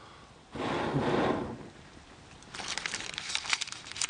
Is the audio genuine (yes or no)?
yes